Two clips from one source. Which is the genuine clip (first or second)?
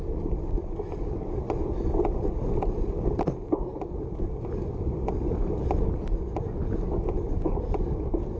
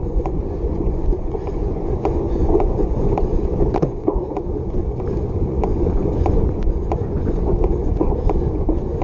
first